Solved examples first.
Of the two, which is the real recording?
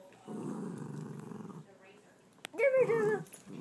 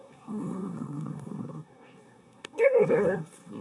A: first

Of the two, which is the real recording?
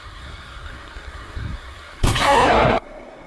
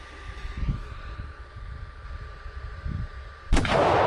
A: second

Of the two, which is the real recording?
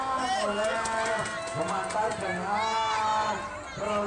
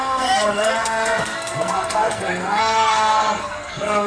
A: first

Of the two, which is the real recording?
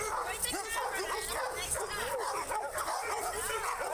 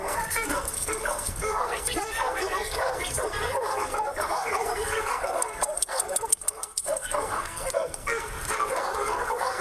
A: first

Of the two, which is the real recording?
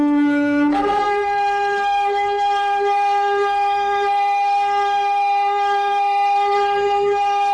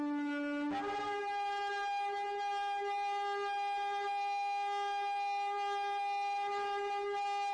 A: second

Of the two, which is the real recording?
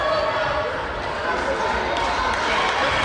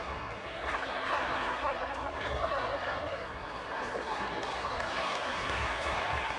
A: first